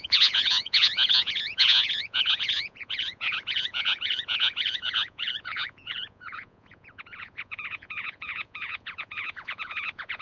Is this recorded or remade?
remade